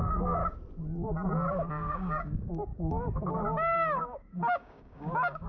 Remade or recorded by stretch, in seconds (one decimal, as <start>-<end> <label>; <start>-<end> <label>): 0.0-0.4 remade; 0.4-1.7 recorded; 1.7-5.5 remade